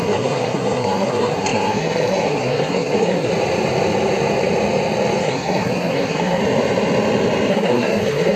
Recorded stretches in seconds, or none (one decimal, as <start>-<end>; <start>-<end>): 3.3-5.2; 6.4-7.5